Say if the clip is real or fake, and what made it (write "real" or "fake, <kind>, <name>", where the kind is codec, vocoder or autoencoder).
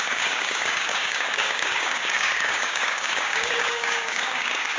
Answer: fake, codec, DAC